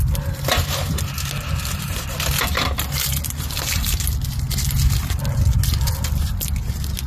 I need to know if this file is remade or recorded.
recorded